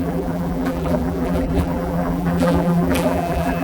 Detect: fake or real fake